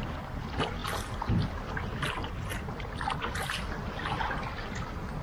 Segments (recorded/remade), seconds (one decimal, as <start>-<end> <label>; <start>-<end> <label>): 0.0-5.2 recorded